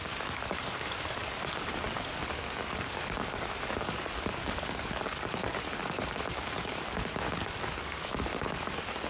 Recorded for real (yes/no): no